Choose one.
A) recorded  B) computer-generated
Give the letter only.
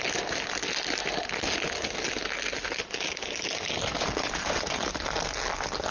A